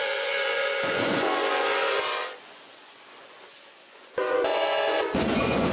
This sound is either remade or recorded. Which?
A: remade